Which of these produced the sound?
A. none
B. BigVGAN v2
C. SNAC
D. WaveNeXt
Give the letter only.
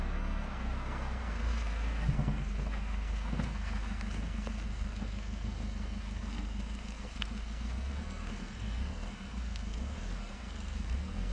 C